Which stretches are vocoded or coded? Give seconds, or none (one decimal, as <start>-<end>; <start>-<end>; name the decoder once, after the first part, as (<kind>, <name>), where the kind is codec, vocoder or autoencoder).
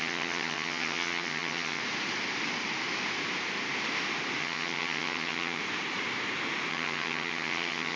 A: 0.0-1.8 (vocoder, HiFi-GAN); 4.4-5.6; 6.7-8.0